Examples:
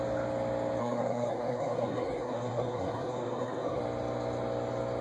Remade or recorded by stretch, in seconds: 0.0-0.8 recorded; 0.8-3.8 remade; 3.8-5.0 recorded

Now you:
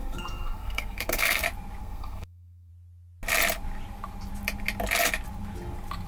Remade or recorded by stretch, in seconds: 0.0-1.4 remade; 1.4-1.8 recorded; 1.8-2.7 remade; 2.7-6.1 recorded

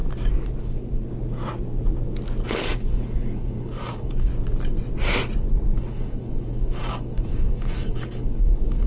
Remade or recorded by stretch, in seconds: 0.0-0.6 recorded; 0.6-1.1 remade; 1.1-2.5 recorded; 2.5-4.3 remade; 4.3-5.8 recorded; 5.8-8.9 remade

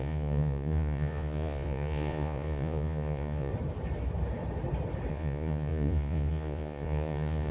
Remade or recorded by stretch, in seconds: 0.0-3.5 remade; 3.5-5.1 recorded; 5.1-7.5 remade